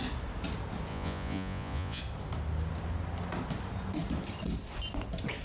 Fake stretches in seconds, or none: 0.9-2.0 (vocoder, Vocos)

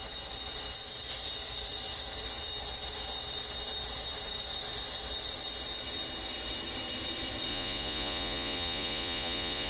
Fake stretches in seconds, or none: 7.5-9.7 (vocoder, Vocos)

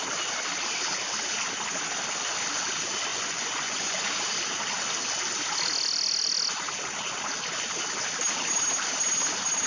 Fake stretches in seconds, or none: 3.1-4.1 (vocoder, Vocos)